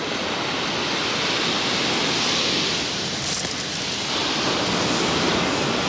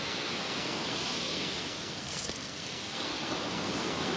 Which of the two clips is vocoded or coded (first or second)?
second